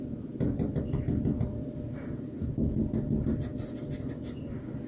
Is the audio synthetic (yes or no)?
no